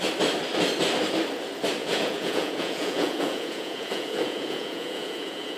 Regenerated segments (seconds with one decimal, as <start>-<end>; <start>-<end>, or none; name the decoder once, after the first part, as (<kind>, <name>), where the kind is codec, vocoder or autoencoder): 1.8-5.6 (vocoder, Vocos)